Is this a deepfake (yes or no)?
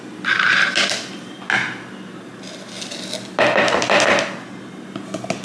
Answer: no